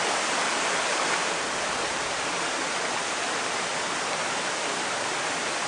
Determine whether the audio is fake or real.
real